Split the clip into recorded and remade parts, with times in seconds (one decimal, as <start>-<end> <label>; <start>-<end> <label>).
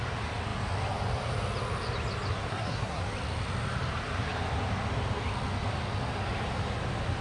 0.0-2.5 recorded; 2.5-3.0 remade; 3.0-7.2 recorded